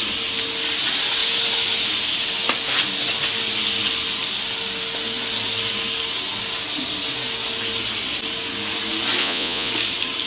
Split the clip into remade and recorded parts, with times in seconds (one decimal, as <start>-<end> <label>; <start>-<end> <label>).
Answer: 0.0-9.2 recorded; 9.2-9.7 remade; 9.7-10.3 recorded

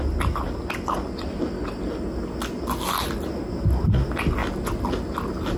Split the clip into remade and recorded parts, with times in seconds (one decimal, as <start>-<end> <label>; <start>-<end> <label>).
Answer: 0.0-5.6 recorded

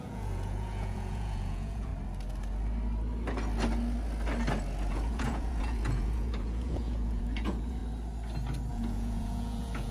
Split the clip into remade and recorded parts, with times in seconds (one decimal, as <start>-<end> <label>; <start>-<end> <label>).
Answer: 0.0-1.9 remade; 1.9-4.9 recorded; 4.9-7.8 remade; 7.8-8.7 recorded; 8.7-9.9 remade